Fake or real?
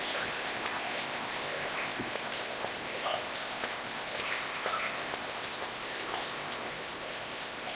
fake